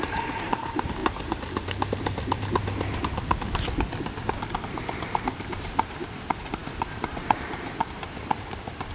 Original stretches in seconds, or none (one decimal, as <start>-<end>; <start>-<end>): 1.0-4.6